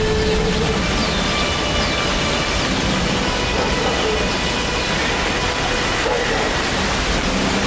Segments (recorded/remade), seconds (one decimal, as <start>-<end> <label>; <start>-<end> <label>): 0.0-7.7 recorded